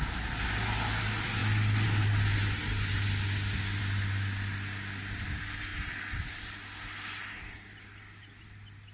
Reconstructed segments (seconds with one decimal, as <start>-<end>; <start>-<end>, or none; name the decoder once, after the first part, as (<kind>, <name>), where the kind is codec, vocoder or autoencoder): none

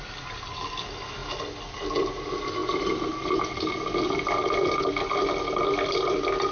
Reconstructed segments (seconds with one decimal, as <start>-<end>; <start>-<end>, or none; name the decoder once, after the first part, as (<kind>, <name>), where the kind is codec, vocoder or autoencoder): none